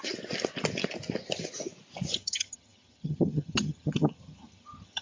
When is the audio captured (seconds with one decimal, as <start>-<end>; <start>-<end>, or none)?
0.0-2.1